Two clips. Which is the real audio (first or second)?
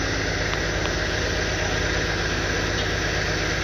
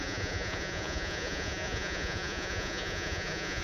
first